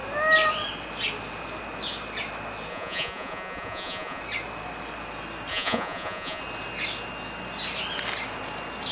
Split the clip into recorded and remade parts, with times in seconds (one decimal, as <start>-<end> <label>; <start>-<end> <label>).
0.0-2.7 recorded; 2.7-4.2 remade; 4.2-5.5 recorded; 5.5-6.4 remade; 6.4-8.9 recorded